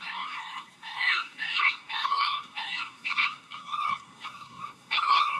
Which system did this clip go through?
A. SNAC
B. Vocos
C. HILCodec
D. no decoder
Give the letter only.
A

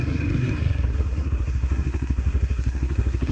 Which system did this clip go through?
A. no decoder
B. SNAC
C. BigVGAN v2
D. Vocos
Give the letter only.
B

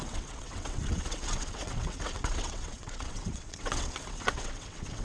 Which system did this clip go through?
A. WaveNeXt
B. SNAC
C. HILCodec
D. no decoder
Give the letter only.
A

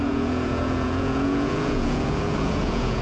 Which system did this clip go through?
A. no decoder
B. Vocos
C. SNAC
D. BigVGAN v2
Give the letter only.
B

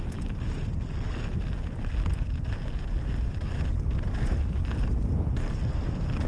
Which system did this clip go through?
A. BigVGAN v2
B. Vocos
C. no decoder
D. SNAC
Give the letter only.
C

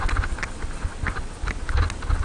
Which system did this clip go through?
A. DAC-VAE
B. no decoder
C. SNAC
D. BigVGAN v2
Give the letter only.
B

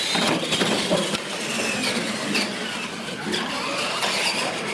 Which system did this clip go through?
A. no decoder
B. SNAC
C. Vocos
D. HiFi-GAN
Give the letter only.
A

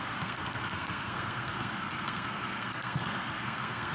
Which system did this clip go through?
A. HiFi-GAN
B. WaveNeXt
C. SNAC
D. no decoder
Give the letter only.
C